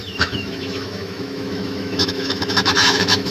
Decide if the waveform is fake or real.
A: fake